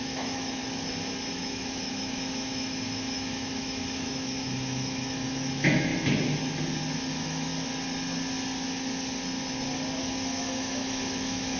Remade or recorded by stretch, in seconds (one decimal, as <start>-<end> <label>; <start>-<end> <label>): 0.0-0.6 remade; 0.6-1.3 recorded; 1.3-5.9 remade; 5.9-7.1 recorded; 7.1-7.5 remade; 7.5-10.0 recorded; 10.0-11.6 remade